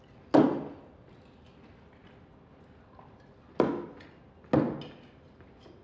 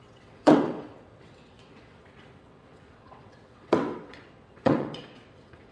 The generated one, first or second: second